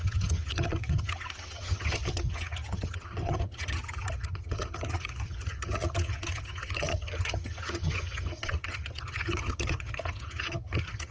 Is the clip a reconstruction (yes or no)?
yes